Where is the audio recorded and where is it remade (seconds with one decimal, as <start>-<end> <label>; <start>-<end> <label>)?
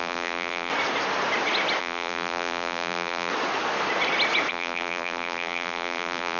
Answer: 0.0-0.7 remade; 0.7-1.8 recorded; 1.8-3.3 remade; 3.3-4.5 recorded; 4.5-6.4 remade